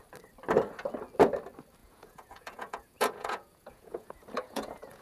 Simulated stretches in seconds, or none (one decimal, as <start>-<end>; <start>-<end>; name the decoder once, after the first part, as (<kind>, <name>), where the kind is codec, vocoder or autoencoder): 1.8-5.0 (vocoder, Vocos)